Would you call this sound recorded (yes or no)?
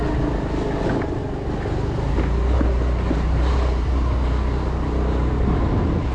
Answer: yes